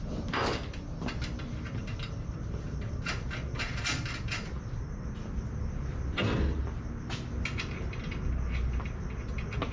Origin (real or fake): real